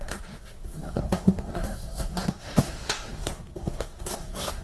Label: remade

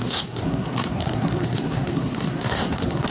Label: remade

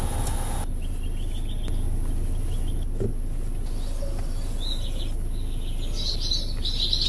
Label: recorded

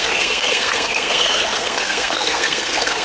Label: remade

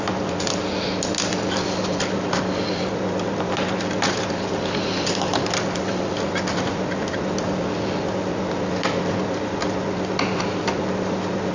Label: recorded